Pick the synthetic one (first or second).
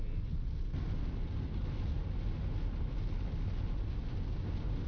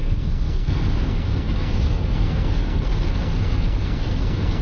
second